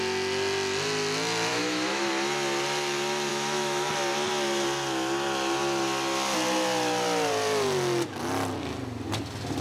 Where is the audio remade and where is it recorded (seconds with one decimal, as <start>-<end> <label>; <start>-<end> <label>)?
0.0-1.5 recorded; 1.5-2.1 remade; 2.1-3.3 recorded; 3.3-3.9 remade; 3.9-9.6 recorded